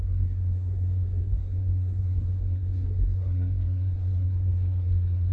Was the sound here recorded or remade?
remade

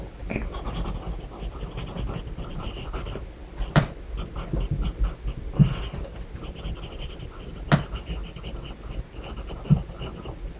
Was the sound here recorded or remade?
recorded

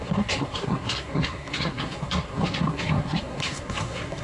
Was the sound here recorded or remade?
remade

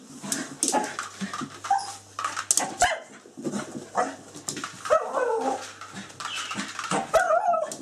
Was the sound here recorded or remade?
recorded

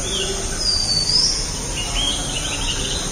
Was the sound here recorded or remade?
recorded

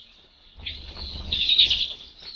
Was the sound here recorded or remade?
remade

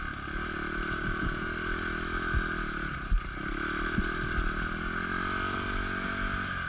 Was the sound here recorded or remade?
recorded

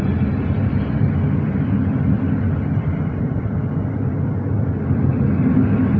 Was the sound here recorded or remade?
recorded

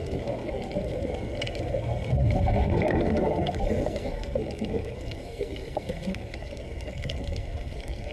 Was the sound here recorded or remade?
remade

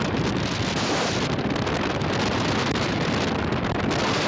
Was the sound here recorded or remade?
remade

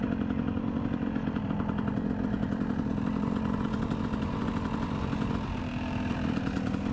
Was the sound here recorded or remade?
recorded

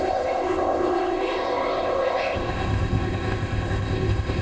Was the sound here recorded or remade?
remade